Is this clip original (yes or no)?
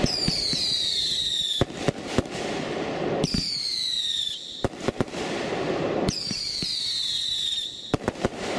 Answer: no